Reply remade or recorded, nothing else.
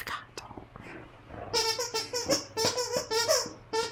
recorded